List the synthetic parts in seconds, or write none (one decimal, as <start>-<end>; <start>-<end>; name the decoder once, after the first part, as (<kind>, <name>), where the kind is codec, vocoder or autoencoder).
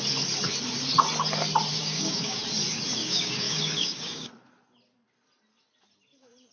1.7-2.4 (codec, DAC); 3.0-4.3